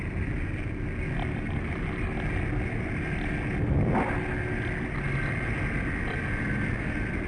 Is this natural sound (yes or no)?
yes